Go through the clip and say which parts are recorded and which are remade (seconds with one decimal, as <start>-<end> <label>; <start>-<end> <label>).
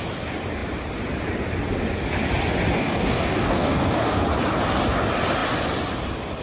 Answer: 0.0-2.8 recorded; 2.8-4.2 remade; 4.2-6.4 recorded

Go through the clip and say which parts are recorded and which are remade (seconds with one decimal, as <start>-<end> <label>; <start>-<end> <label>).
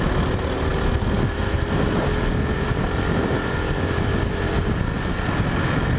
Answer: 0.0-6.0 recorded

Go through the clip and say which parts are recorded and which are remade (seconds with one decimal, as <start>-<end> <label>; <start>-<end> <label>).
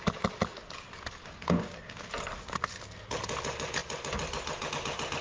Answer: 0.0-1.2 recorded; 1.2-2.1 remade; 2.1-5.2 recorded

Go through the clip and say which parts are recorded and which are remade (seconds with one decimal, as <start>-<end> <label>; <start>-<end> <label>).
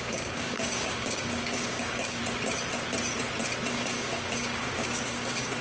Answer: 0.0-2.2 remade; 2.2-3.7 recorded; 3.7-5.6 remade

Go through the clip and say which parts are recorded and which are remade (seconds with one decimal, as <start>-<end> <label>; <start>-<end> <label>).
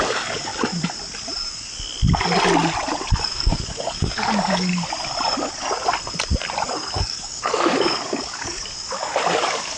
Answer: 0.0-0.5 remade; 0.5-3.2 recorded; 3.2-4.7 remade; 4.7-6.7 recorded; 6.7-9.8 remade